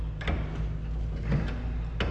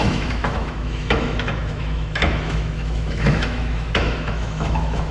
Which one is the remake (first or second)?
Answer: second